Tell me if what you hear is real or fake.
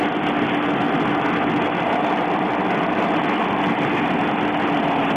real